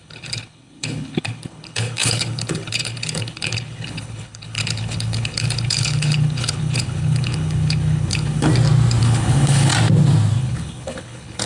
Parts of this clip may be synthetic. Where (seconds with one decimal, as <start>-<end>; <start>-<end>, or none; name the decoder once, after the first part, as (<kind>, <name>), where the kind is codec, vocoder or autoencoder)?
0.0-8.5 (codec, HILCodec); 9.0-9.7; 10.4-11.5